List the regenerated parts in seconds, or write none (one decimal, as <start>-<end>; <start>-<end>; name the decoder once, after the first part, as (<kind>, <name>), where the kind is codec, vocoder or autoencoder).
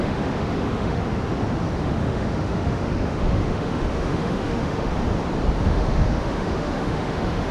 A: 0.0-1.0 (autoencoder, DAC-VAE); 1.8-4.9; 5.6-7.5